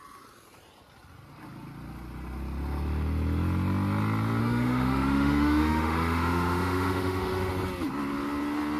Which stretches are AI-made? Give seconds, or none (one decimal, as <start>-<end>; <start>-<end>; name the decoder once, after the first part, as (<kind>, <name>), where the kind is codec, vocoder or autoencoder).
4.4-7.5 (autoencoder, DAC-VAE)